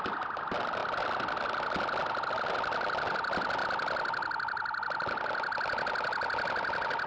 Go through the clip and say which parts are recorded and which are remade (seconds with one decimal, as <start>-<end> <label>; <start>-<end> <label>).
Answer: 0.0-7.1 recorded